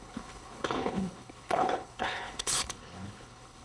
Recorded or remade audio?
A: remade